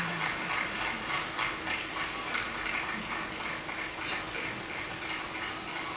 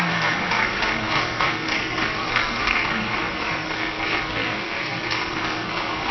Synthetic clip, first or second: second